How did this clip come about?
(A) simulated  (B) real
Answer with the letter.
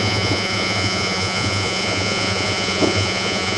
A